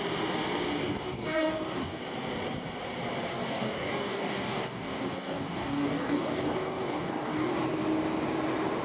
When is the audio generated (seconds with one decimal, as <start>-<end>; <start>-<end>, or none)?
0.8-2.0; 3.3-7.5